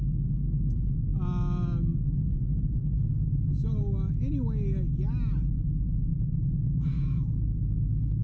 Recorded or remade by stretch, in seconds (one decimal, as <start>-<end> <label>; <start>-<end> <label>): 0.0-6.1 recorded; 6.1-8.2 remade